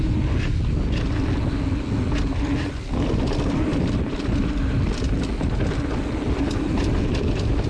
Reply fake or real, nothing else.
real